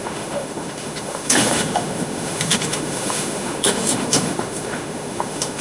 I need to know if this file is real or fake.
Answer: fake